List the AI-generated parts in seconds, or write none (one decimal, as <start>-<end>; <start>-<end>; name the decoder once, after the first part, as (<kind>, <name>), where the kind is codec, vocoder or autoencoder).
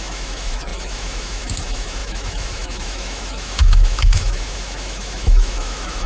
0.0-6.1 (autoencoder, DAC-VAE)